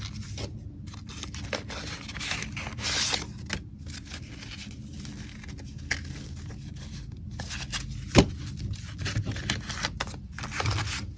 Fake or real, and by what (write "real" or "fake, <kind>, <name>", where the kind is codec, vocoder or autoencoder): real